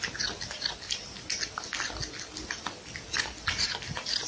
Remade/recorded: recorded